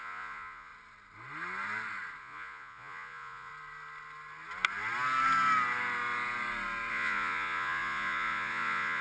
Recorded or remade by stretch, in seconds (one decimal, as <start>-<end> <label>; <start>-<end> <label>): 0.0-0.7 remade; 0.7-2.2 recorded; 2.2-3.5 remade; 3.5-6.9 recorded; 6.9-9.0 remade